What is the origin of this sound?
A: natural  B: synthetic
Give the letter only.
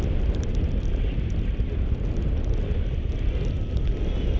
A